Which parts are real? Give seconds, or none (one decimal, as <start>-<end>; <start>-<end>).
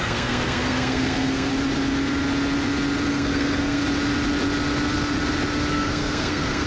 1.5-3.1; 3.8-5.7